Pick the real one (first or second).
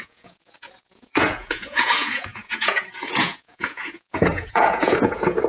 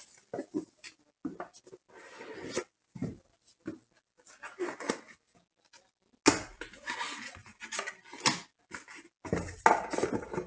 second